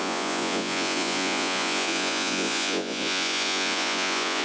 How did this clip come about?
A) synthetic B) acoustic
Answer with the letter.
A